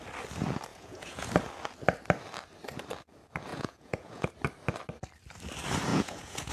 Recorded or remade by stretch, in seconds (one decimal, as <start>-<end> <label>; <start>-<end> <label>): 0.0-0.7 recorded; 0.7-1.3 remade; 1.3-3.5 recorded; 3.5-4.3 remade; 4.3-5.9 recorded; 5.9-6.5 remade